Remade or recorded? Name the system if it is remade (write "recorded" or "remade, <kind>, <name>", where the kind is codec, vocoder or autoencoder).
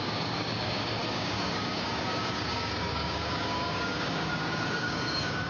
remade, codec, DAC